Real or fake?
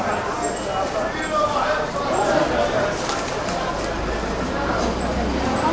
real